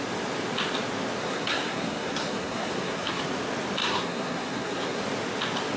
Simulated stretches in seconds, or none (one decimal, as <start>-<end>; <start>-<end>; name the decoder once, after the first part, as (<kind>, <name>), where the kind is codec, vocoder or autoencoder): 1.2-3.2 (codec, SNAC); 3.8-5.0